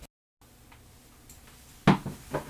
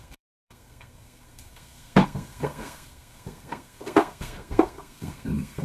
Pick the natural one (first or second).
first